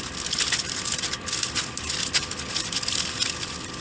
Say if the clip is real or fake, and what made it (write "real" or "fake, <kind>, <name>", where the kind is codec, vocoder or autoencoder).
fake, vocoder, BigVGAN v2